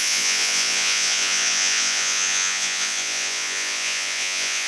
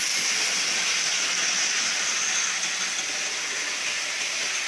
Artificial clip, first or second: first